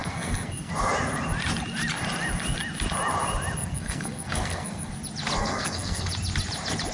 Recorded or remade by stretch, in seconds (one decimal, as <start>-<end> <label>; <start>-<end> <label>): 0.0-0.7 remade; 0.7-3.6 recorded; 3.6-4.9 remade; 4.9-5.4 recorded; 5.4-6.1 remade; 6.1-6.9 recorded